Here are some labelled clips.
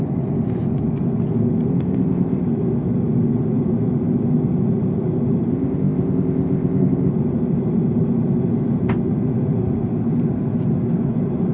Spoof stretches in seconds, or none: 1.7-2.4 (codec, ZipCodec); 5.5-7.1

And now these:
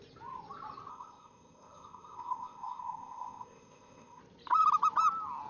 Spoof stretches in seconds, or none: 0.9-4.2 (codec, ZipCodec)

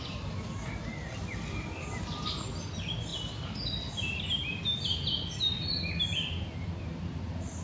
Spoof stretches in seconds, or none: none

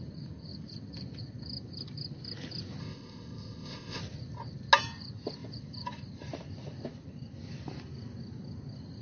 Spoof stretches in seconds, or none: 2.8-4.0 (codec, ZipCodec)

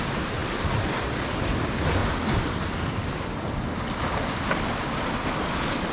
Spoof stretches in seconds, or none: none

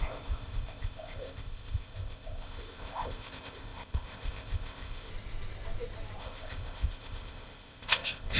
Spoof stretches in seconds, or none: 0.0-5.1 (codec, ZipCodec); 6.2-8.4

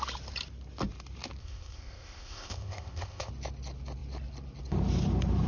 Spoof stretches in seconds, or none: 1.4-3.3 (codec, ZipCodec)

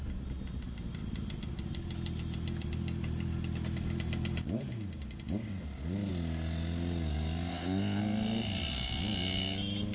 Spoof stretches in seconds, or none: 7.5-8.0 (codec, ZipCodec)